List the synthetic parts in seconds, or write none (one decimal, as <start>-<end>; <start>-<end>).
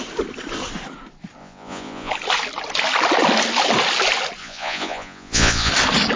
1.4-2.1; 4.4-5.7